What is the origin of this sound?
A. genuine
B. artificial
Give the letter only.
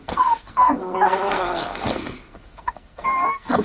B